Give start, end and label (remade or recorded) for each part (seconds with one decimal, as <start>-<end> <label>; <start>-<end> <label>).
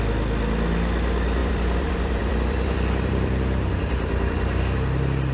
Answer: 0.0-1.4 recorded; 1.4-4.6 remade; 4.6-5.3 recorded